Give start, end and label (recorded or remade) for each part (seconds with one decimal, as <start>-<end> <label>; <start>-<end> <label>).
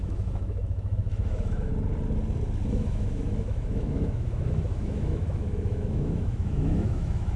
0.0-1.7 remade; 1.7-2.7 recorded; 2.7-7.4 remade